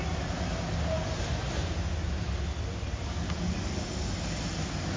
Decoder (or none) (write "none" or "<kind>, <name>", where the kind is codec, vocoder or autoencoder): none